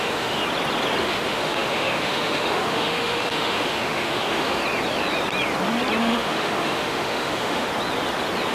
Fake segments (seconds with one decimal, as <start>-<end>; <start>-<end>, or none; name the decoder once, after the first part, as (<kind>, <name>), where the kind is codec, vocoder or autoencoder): 0.0-0.4 (autoencoder, DAC-VAE); 1.0-4.6; 6.0-7.7

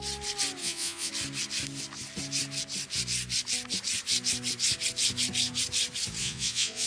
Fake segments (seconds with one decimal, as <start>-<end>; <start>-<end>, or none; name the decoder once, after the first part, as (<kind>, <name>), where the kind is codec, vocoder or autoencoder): 0.6-1.1 (vocoder, Vocos); 6.2-6.9

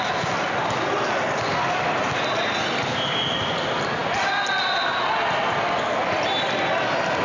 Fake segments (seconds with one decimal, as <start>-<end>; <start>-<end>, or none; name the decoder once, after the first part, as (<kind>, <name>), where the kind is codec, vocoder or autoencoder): none

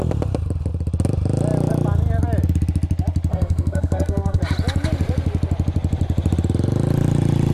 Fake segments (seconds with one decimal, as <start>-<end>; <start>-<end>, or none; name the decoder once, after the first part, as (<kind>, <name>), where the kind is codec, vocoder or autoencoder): 3.3-4.4 (codec, SNAC)

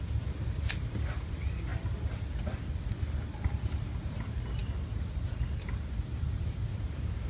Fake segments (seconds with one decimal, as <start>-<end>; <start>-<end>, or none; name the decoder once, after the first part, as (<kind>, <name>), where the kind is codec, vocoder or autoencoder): none

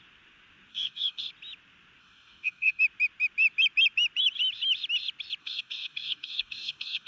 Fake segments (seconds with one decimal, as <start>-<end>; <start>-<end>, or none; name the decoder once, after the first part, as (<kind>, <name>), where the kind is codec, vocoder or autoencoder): 0.7-1.3 (codec, DAC); 2.0-2.8; 5.4-7.1

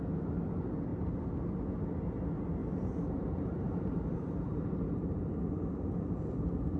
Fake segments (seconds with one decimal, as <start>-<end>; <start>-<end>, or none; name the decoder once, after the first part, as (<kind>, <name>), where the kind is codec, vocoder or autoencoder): 0.9-1.5 (vocoder, BigVGAN v2); 2.6-5.2

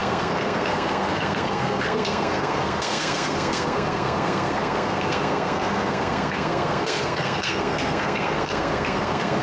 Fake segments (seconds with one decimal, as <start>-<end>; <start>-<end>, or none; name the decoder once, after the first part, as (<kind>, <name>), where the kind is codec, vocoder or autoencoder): 0.0-9.4 (codec, SNAC)